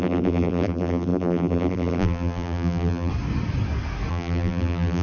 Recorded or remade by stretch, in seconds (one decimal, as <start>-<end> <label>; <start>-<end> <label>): 0.0-3.1 remade; 3.1-4.1 recorded; 4.1-5.0 remade